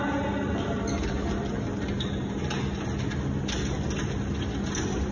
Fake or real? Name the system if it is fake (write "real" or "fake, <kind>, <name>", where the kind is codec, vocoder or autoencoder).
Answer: real